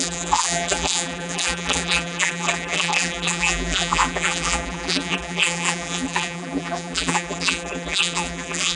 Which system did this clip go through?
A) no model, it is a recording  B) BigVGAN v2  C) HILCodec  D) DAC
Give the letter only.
B